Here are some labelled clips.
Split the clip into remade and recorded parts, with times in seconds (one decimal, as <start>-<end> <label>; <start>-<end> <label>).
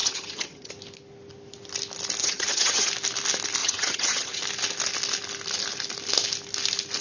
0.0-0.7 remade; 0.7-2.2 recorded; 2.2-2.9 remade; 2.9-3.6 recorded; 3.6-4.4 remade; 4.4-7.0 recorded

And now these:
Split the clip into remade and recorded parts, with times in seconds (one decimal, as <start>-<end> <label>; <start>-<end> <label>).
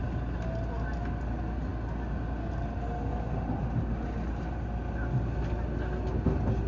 0.0-6.7 recorded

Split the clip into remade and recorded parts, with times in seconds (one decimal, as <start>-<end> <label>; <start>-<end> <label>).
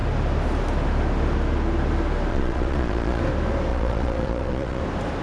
0.0-2.3 recorded; 2.3-3.2 remade; 3.2-3.7 recorded; 3.7-4.8 remade; 4.8-5.2 recorded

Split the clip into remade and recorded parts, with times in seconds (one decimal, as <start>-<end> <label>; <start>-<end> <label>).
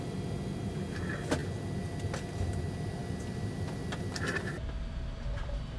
0.0-5.8 recorded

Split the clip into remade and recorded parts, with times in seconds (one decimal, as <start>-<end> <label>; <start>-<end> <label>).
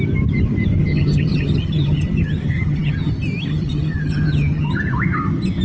0.0-0.8 recorded; 0.8-3.1 remade; 3.1-3.5 recorded; 3.5-4.7 remade; 4.7-5.6 recorded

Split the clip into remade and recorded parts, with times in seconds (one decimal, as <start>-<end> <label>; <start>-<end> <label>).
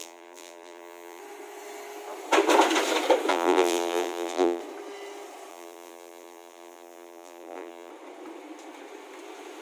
0.0-1.2 remade; 1.2-3.3 recorded; 3.3-4.6 remade; 4.6-5.5 recorded; 5.5-7.9 remade; 7.9-9.6 recorded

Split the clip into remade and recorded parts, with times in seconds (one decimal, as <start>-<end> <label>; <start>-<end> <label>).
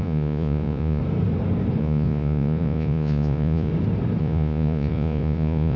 0.0-1.0 remade; 1.0-1.8 recorded; 1.8-3.7 remade; 3.7-4.2 recorded; 4.2-5.8 remade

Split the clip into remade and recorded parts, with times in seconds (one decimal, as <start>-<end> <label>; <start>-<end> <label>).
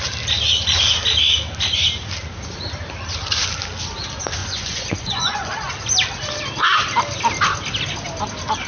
0.0-4.4 recorded; 4.4-5.5 remade; 5.5-8.7 recorded